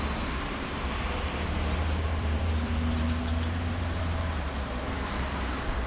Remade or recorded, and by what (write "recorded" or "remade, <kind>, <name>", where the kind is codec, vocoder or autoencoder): remade, vocoder, BigVGAN v2